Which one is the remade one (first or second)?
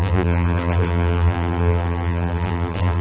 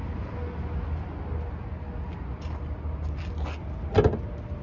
first